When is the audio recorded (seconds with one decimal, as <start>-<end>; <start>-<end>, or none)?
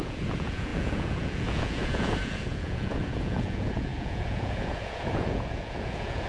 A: none